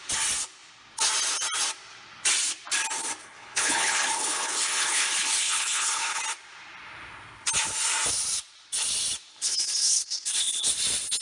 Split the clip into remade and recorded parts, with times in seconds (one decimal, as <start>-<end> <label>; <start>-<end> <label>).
0.0-3.2 recorded; 3.2-6.2 remade; 6.2-9.3 recorded; 9.3-10.7 remade; 10.7-11.2 recorded